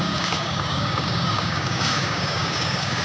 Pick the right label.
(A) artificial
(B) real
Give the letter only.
A